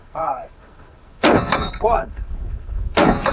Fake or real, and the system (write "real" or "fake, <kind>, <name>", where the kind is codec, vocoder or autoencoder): fake, codec, SNAC